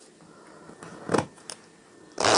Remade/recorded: recorded